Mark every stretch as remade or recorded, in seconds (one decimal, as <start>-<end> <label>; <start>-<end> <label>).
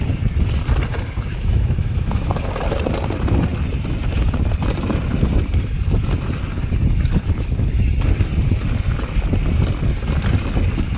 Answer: 0.0-1.3 recorded; 1.3-2.4 remade; 2.4-11.0 recorded